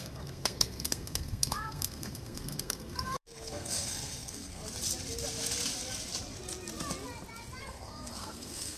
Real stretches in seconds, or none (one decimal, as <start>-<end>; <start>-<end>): 4.6-7.6